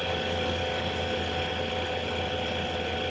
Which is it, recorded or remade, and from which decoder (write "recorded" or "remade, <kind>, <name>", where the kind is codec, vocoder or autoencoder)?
recorded